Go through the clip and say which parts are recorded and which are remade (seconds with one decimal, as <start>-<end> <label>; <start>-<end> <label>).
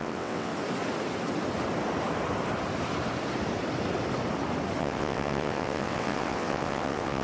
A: 0.0-0.5 remade; 0.5-4.8 recorded; 4.8-7.2 remade